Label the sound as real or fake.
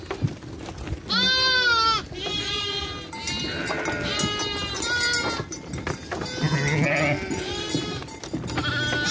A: real